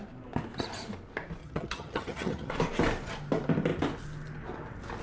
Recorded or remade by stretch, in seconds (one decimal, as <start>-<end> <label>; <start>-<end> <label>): 0.0-1.4 recorded; 1.4-2.5 remade; 2.5-5.0 recorded